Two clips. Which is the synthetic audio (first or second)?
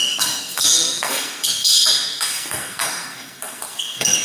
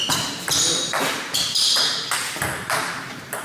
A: first